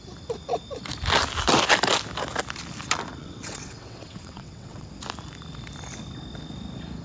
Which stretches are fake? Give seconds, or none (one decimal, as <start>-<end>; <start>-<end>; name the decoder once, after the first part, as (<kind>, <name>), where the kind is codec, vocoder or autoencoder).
3.2-4.9 (vocoder, WaveNeXt)